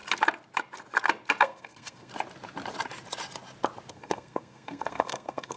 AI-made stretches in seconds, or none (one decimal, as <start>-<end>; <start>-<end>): 1.4-2.1; 3.9-5.6